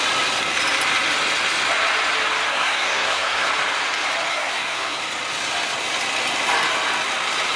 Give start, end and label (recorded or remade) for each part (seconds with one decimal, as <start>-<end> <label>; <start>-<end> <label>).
0.0-2.5 recorded; 2.5-3.5 remade; 3.5-4.3 recorded; 4.3-5.0 remade; 5.0-7.6 recorded